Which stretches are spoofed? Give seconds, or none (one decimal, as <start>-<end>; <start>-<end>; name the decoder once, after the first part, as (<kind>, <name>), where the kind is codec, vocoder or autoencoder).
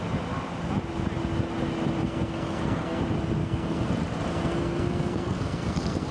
2.0-3.0 (codec, SNAC); 3.4-3.9; 4.3-6.1